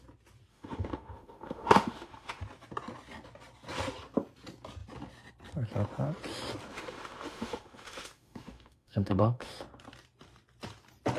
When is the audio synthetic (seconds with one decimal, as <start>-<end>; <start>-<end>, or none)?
0.5-2.4; 6.7-9.5